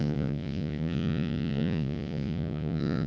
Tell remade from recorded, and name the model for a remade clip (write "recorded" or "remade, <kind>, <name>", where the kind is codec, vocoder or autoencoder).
remade, vocoder, Vocos